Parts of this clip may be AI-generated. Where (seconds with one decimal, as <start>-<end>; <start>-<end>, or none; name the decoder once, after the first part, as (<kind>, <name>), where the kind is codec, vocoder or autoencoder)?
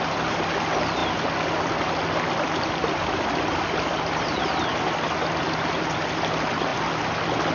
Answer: none